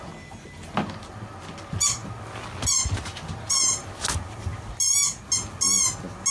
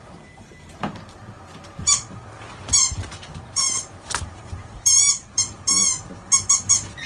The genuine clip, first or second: first